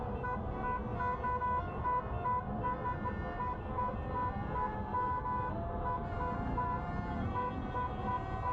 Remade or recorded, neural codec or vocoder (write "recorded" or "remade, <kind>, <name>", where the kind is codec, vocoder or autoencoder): recorded